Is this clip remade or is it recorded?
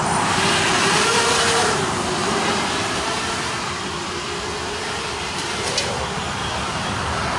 remade